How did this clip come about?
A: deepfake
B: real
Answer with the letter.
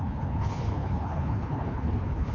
A